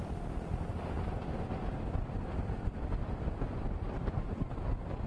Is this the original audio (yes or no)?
no